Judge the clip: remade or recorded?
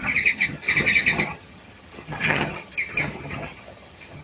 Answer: remade